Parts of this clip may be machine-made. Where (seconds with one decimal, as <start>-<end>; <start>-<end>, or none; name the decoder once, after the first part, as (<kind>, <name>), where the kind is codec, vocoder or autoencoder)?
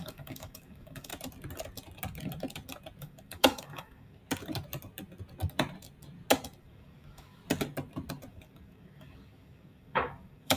0.0-1.1 (codec, DAC); 3.0-4.2; 6.6-7.4; 8.3-10.6